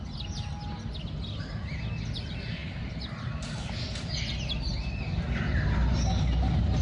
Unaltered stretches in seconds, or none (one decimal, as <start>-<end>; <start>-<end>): 0.0-6.8